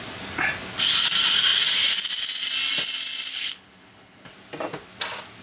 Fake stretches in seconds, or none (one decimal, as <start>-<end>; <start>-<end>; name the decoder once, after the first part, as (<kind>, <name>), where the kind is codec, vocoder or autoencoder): 3.3-4.3 (codec, HILCodec)